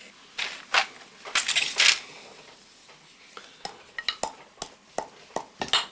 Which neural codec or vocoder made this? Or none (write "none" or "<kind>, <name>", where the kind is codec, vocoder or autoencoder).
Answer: none